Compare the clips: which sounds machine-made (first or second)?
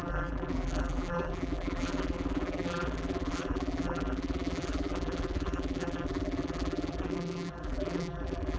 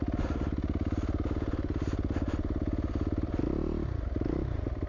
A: first